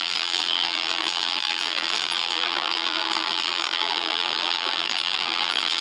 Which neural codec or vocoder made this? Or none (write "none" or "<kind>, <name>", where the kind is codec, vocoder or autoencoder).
vocoder, BigVGAN v2